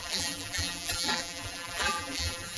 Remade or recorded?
remade